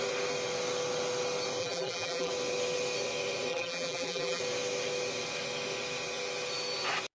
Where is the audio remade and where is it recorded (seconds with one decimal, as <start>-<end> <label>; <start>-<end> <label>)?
0.0-1.6 recorded; 1.6-2.3 remade; 2.3-3.5 recorded; 3.5-4.4 remade; 4.4-7.1 recorded